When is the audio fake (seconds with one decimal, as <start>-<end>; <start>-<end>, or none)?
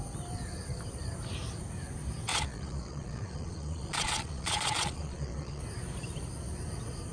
2.3-5.6